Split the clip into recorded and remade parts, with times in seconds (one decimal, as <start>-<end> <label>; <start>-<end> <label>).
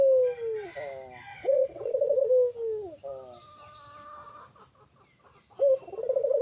0.0-1.3 recorded; 1.3-1.9 remade; 1.9-6.4 recorded